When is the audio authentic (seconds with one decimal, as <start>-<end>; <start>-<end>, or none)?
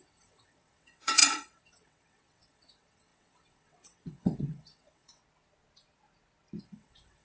5.2-6.6